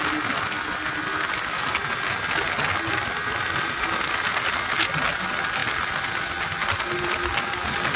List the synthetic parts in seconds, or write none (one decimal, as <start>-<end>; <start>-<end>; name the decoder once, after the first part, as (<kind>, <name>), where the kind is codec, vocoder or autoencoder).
none